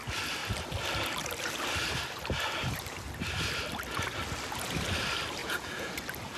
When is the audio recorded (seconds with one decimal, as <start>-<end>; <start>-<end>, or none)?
0.0-5.4; 6.0-6.4